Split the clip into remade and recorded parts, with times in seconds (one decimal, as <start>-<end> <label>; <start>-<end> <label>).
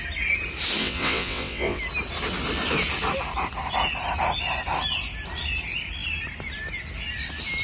0.0-0.8 recorded; 0.8-1.8 remade; 1.8-7.6 recorded